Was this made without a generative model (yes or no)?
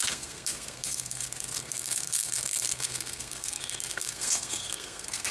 no